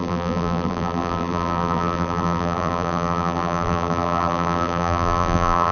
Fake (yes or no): yes